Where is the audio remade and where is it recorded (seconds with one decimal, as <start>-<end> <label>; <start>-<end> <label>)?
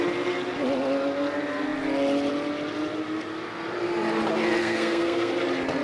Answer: 0.0-4.6 recorded; 4.6-5.3 remade; 5.3-5.8 recorded